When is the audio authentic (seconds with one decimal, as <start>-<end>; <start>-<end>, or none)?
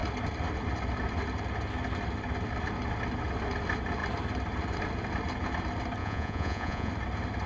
0.0-6.0; 6.9-7.5